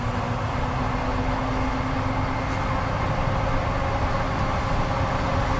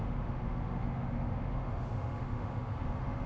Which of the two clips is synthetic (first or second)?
second